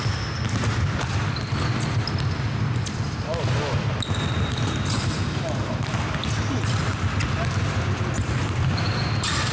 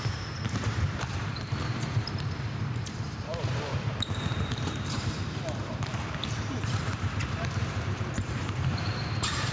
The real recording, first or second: first